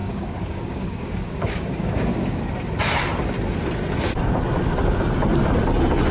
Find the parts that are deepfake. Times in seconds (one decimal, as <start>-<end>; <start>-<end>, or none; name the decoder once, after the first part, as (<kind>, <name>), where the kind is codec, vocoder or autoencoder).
0.0-2.4 (codec, DAC)